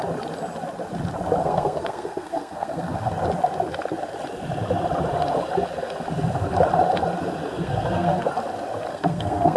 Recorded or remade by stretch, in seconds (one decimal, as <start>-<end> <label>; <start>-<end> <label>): 0.0-1.4 recorded; 1.4-3.1 remade; 3.1-7.5 recorded; 7.5-8.3 remade; 8.3-8.9 recorded; 8.9-9.6 remade